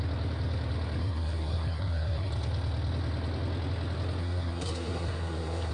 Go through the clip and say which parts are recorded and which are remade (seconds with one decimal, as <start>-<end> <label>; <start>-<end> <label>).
0.0-1.0 recorded; 1.0-2.3 remade; 2.3-4.2 recorded; 4.2-5.7 remade